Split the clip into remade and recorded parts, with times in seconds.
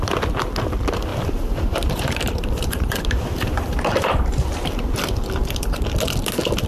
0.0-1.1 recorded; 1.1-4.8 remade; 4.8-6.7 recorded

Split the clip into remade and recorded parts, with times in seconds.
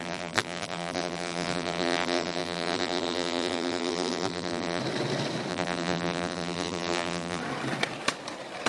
0.0-4.8 remade; 4.8-5.5 recorded; 5.5-7.4 remade; 7.4-8.7 recorded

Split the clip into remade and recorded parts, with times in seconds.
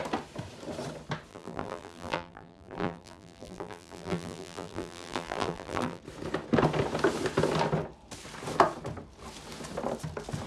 0.0-1.3 recorded; 1.3-6.0 remade; 6.0-10.5 recorded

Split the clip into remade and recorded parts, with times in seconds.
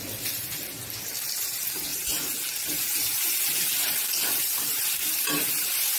0.0-0.8 remade; 0.8-1.4 recorded; 1.4-6.0 remade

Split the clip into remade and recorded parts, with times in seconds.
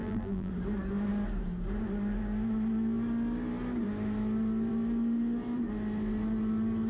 0.0-0.5 remade; 0.5-6.9 recorded